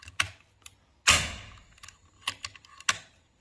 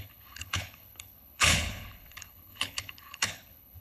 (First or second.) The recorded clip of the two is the first